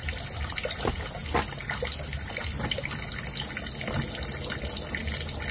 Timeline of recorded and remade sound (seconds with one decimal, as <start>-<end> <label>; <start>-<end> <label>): 0.0-5.5 recorded